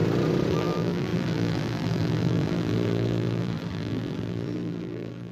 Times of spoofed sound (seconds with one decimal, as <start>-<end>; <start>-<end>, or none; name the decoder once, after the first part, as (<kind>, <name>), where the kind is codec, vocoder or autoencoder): 0.5-5.3 (vocoder, BigVGAN v2)